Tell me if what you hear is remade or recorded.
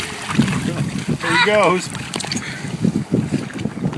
recorded